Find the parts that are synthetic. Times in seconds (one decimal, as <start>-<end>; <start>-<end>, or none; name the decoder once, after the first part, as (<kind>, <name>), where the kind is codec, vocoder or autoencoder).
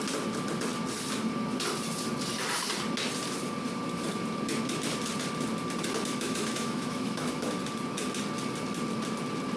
6.1-7.6 (autoencoder, DAC-VAE)